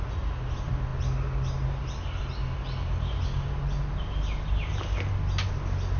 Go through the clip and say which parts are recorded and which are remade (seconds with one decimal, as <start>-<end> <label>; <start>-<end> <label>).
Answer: 0.0-6.0 recorded